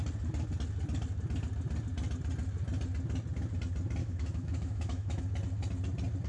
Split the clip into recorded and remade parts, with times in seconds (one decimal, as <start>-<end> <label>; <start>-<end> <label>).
0.0-4.0 recorded; 4.0-5.2 remade; 5.2-6.3 recorded